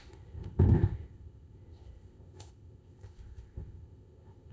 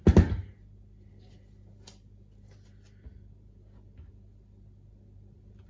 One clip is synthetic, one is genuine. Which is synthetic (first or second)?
first